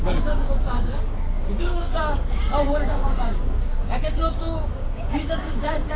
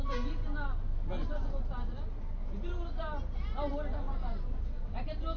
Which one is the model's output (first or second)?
first